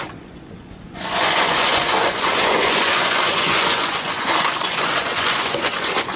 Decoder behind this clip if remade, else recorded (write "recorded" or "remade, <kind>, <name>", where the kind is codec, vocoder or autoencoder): remade, vocoder, Vocos